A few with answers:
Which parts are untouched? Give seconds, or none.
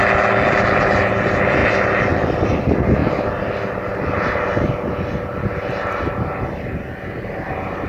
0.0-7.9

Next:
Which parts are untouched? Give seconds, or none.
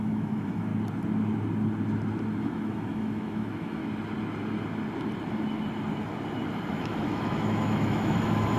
0.7-2.4; 3.8-6.7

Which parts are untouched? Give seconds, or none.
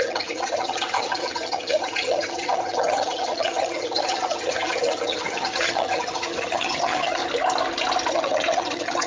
7.2-8.1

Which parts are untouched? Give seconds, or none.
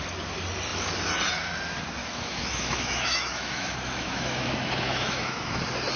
0.0-2.0; 5.6-6.0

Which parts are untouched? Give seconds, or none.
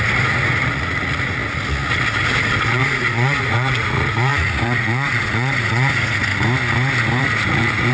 6.3-7.2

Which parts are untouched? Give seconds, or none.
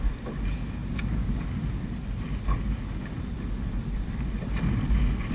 0.0-5.3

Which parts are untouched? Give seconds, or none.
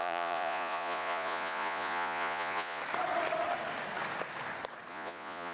2.8-4.9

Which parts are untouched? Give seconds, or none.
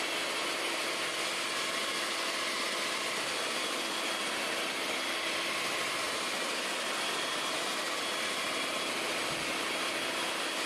0.0-10.7